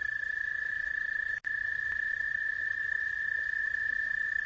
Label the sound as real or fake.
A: real